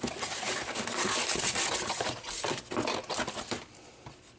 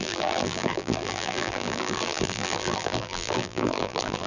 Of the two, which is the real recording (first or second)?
first